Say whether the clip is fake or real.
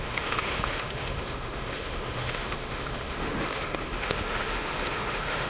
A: fake